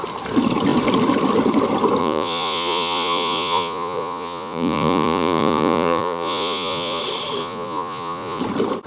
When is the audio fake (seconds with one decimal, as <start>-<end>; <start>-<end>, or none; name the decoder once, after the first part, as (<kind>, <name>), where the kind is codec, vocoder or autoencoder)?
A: 2.0-7.0 (vocoder, Vocos); 7.4-8.4

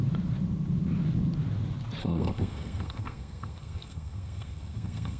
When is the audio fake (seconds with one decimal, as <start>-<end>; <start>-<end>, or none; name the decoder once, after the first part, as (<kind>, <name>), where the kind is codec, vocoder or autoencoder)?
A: 2.0-5.2 (codec, SNAC)

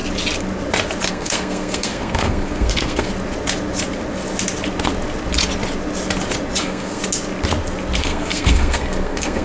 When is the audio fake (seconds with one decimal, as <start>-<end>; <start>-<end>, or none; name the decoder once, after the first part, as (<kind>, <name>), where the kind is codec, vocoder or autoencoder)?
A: 1.1-3.1 (codec, SNAC); 6.6-7.0; 8.0-9.4

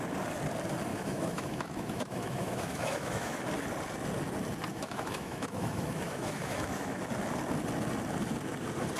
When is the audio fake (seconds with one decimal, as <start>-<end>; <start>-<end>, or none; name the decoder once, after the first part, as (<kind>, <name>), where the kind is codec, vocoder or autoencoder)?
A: 0.9-3.4 (autoencoder, DAC-VAE); 4.7-7.0

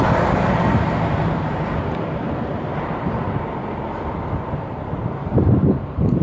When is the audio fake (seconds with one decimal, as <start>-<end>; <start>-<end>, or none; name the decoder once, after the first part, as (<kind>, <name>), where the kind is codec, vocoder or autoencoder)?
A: 0.0-3.6 (vocoder, BigVGAN v2); 4.4-6.2

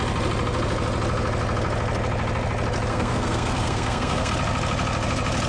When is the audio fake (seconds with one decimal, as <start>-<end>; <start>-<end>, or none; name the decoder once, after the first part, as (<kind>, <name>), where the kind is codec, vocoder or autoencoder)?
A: 2.9-4.3 (codec, SNAC)

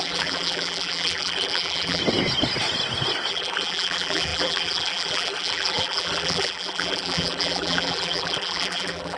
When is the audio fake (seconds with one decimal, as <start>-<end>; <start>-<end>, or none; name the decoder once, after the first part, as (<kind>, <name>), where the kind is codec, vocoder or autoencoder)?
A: 0.0-2.0 (vocoder, BigVGAN v2); 3.3-9.2

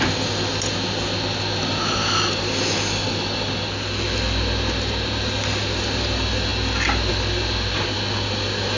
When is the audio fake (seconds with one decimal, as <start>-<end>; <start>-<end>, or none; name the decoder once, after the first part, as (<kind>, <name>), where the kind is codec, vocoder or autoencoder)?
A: none